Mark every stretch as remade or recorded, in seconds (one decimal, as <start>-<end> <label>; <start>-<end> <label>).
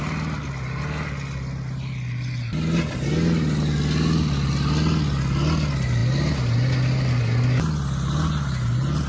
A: 0.0-9.1 recorded